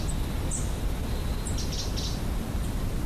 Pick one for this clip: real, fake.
real